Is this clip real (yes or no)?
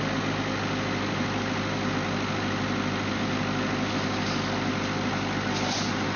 yes